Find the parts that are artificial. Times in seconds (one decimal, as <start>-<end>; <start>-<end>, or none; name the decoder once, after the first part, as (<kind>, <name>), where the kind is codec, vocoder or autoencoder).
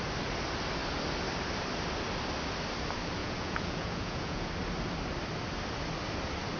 3.2-4.5 (vocoder, Vocos)